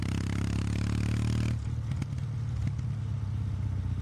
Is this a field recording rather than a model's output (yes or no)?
yes